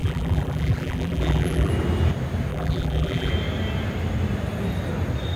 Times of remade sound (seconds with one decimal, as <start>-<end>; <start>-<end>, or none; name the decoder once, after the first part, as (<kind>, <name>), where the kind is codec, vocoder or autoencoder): 0.0-1.7 (vocoder, BigVGAN v2); 2.5-3.3